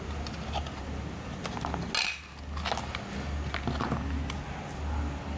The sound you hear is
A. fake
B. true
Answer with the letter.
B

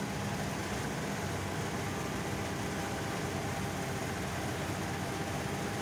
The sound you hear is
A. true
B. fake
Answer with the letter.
A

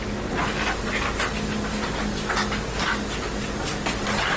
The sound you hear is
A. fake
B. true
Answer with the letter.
B